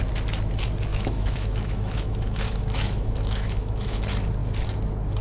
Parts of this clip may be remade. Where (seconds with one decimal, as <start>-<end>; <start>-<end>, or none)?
0.9-4.0